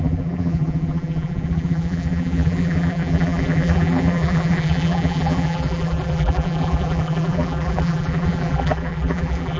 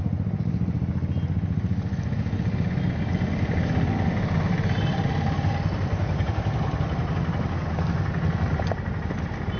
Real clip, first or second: second